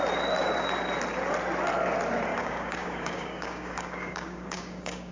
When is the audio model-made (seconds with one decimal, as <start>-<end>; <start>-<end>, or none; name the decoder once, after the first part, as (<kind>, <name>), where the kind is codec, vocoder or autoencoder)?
2.3-5.1 (codec, DAC)